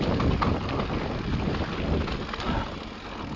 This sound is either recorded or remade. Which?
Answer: recorded